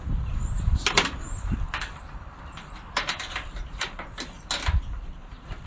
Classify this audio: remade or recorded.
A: recorded